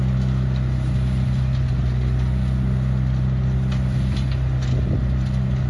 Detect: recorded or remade recorded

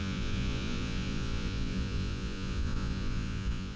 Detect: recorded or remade remade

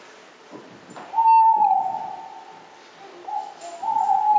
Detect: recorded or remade recorded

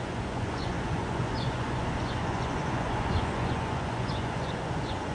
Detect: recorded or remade remade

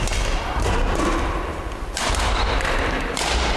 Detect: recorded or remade recorded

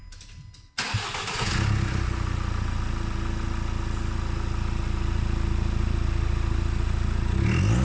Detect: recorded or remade recorded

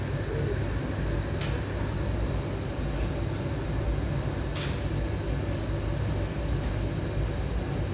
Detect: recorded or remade recorded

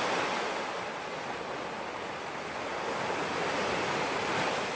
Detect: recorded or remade recorded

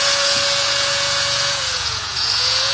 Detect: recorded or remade remade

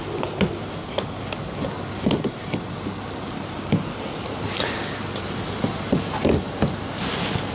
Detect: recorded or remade recorded